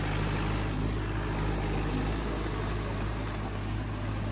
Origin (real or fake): real